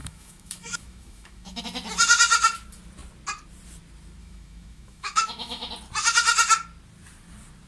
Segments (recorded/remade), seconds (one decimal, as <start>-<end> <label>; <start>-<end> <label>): 0.0-1.6 remade; 1.6-4.2 recorded; 4.2-5.7 remade; 5.7-7.7 recorded